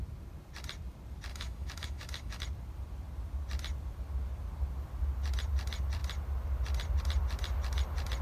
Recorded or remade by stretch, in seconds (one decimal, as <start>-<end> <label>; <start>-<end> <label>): 0.0-1.3 recorded; 1.3-2.4 remade; 2.4-8.2 recorded